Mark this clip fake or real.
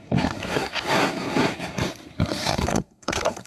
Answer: fake